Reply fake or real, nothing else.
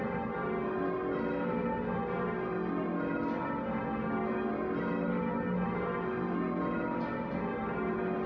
real